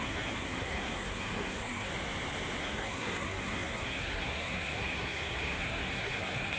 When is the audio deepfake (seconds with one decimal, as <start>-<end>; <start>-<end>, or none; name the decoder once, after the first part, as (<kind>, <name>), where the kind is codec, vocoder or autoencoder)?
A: 0.0-1.9 (codec, SNAC); 2.6-6.6